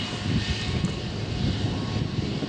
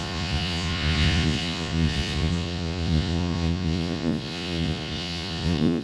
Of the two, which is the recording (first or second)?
first